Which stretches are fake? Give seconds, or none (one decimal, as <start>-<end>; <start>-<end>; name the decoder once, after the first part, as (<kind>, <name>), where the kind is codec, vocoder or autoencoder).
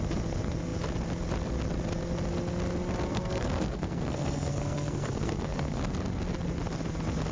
3.1-5.8 (codec, SNAC)